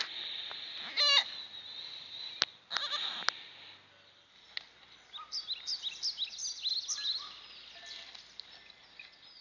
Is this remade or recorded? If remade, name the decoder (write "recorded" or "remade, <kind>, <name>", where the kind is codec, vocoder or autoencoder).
recorded